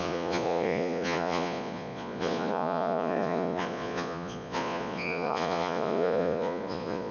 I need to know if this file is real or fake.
fake